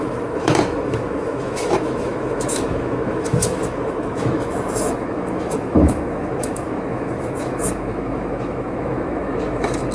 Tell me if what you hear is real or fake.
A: fake